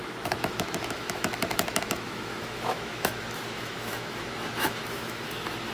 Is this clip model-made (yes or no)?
yes